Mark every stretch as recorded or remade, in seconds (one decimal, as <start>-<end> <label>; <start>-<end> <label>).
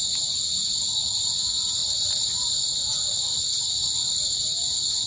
0.0-5.1 remade